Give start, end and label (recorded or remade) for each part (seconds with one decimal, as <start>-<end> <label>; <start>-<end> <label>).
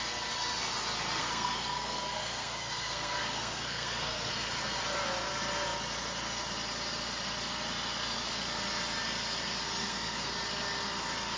0.0-1.2 recorded; 1.2-4.3 remade; 4.3-9.8 recorded; 9.8-10.3 remade; 10.3-11.4 recorded